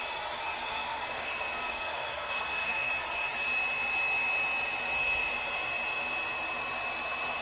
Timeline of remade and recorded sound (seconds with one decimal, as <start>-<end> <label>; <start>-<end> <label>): 0.0-0.7 recorded; 0.7-2.9 remade; 2.9-7.4 recorded